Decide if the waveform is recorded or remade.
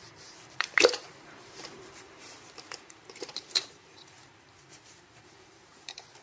remade